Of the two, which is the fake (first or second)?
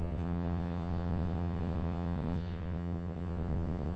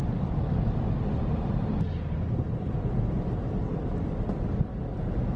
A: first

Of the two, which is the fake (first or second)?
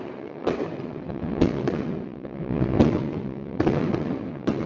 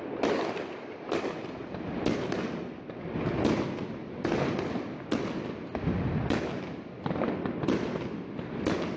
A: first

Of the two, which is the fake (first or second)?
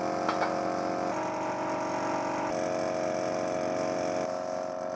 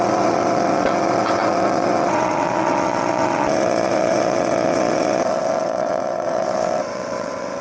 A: second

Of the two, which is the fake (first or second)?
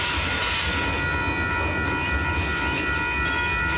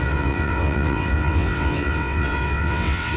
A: second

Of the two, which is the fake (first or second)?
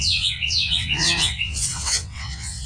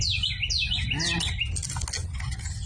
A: first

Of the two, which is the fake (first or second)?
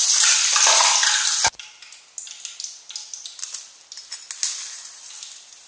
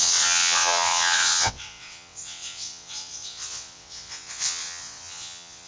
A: second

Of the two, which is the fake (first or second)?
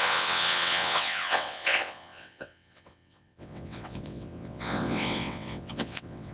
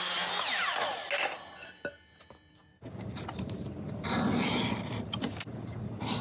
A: first